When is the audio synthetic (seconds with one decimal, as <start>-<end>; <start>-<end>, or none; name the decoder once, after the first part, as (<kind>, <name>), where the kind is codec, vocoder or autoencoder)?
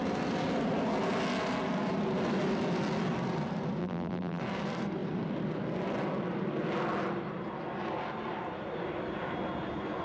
3.8-4.4 (vocoder, BigVGAN v2)